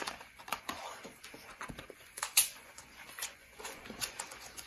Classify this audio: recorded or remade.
remade